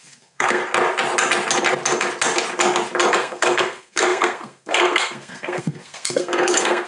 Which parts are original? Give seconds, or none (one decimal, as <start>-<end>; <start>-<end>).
0.6-3.1